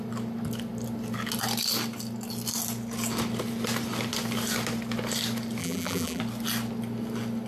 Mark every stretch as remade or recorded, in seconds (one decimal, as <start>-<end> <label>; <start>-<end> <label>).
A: 0.0-5.6 recorded; 5.6-6.2 remade; 6.2-7.5 recorded